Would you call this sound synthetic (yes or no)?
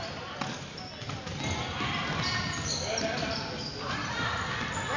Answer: no